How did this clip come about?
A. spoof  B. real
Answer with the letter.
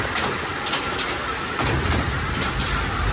B